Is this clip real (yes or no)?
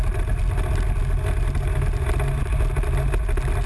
yes